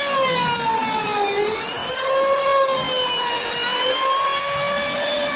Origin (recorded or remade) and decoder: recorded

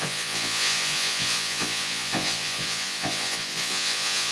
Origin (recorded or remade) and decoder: remade, vocoder, Vocos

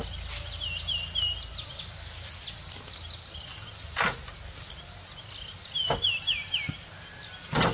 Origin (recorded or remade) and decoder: recorded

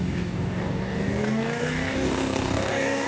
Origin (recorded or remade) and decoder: remade, codec, DAC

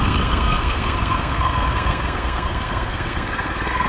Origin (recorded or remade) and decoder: remade, codec, SNAC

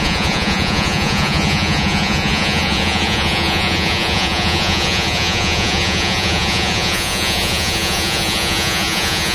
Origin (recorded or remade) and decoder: remade, vocoder, Vocos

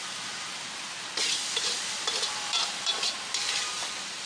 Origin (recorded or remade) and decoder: remade, vocoder, BigVGAN v2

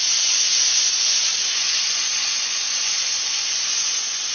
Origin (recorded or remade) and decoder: remade, vocoder, Vocos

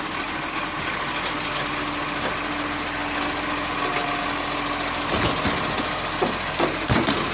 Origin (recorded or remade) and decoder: recorded